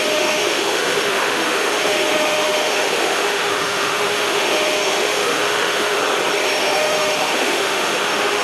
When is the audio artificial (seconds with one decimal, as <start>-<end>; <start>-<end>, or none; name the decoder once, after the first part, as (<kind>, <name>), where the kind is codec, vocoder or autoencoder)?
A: 0.0-6.0 (autoencoder, DAC-VAE); 6.6-8.4